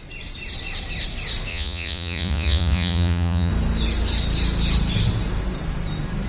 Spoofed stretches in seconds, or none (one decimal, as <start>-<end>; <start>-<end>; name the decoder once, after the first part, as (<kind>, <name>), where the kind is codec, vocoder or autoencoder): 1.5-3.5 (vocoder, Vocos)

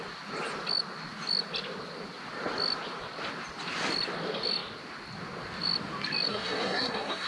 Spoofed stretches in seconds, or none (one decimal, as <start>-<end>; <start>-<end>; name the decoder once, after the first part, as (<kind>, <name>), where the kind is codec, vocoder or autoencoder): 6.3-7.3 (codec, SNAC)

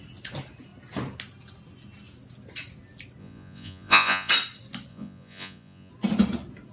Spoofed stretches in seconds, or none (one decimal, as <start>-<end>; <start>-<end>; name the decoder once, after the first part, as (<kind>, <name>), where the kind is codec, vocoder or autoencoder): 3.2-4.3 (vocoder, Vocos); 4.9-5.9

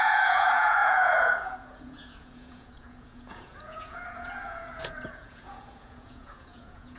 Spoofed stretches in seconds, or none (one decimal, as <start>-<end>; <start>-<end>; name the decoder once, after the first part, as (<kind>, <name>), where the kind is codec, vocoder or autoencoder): 0.0-7.0 (vocoder, Vocos)